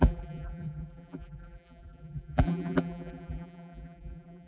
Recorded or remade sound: remade